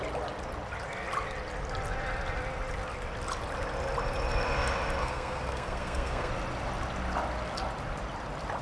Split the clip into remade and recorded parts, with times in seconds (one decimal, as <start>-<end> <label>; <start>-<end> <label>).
0.0-5.0 recorded; 5.0-6.3 remade; 6.3-8.6 recorded